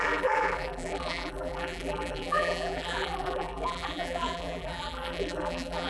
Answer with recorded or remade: remade